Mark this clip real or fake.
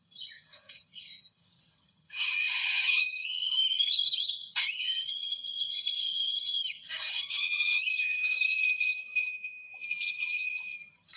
fake